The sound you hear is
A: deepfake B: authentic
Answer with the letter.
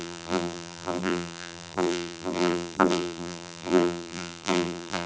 A